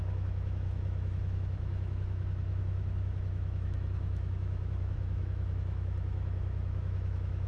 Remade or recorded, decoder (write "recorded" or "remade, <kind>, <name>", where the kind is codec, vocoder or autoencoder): remade, autoencoder, DAC-VAE